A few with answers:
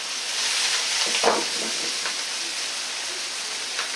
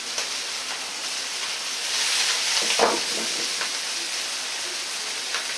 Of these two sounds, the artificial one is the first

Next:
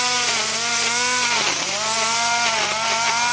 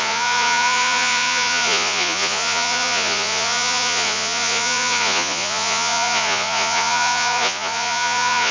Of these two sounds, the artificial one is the second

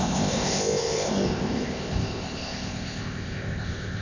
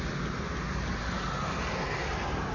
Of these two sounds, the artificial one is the first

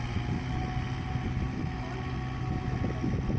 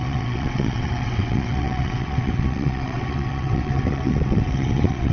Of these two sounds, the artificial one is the second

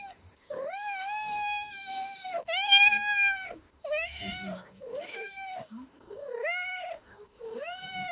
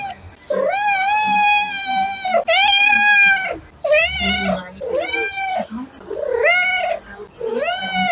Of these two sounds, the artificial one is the first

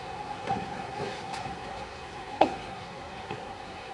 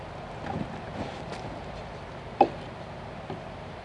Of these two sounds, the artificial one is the first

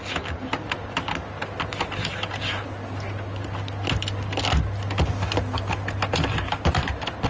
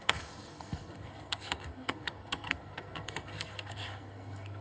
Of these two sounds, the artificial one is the second